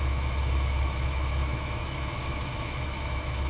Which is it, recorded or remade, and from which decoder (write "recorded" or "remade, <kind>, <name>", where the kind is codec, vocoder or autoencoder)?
remade, autoencoder, DAC-VAE